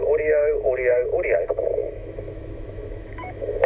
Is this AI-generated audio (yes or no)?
yes